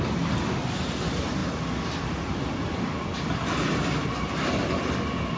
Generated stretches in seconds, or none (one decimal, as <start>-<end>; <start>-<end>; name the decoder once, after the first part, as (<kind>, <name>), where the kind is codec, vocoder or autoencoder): none